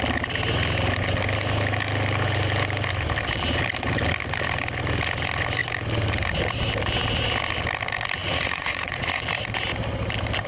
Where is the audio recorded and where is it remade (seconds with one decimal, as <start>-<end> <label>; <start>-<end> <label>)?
0.0-8.2 recorded; 8.2-9.2 remade; 9.2-10.5 recorded